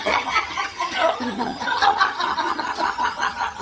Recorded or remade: remade